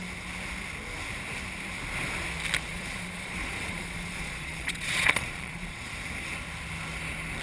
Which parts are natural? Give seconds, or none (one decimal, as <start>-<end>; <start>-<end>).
0.0-2.7; 5.9-7.4